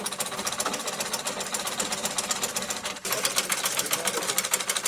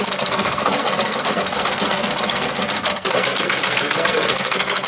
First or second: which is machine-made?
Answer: second